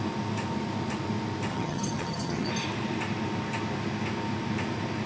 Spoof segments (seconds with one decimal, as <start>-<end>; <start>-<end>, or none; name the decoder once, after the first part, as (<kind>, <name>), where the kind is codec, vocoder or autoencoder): 1.5-2.5 (vocoder, HiFi-GAN)